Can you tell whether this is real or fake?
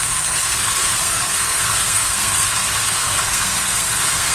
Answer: fake